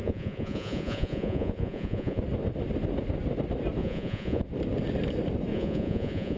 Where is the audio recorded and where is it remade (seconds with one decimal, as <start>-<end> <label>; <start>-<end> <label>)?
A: 0.0-2.2 remade; 2.2-3.8 recorded; 3.8-4.4 remade; 4.4-5.5 recorded; 5.5-6.4 remade